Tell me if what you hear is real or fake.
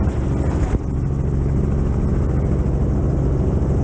real